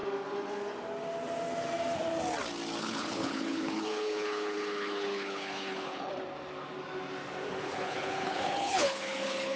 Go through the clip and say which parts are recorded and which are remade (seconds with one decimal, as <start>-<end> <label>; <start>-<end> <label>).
0.0-2.8 recorded; 2.8-6.1 remade; 6.1-7.5 recorded; 7.5-9.6 remade